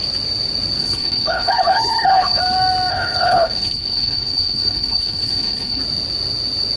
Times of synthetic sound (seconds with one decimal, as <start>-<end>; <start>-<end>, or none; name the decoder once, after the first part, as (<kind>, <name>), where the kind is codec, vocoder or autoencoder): 0.8-2.4 (codec, HILCodec); 2.9-5.8